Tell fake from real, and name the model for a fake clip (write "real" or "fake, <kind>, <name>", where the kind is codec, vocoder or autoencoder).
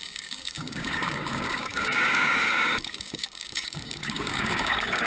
fake, codec, DAC